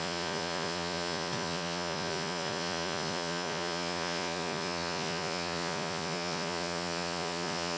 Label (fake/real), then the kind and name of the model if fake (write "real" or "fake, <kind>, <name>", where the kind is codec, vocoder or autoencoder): fake, vocoder, Vocos